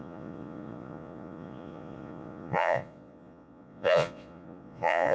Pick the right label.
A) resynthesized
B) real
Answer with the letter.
A